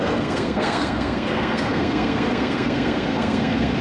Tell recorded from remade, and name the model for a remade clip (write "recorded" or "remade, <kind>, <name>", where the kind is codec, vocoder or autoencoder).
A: remade, codec, SNAC